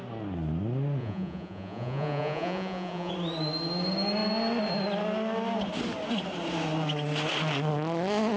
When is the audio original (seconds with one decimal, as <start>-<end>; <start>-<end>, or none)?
0.0-1.0; 3.1-8.4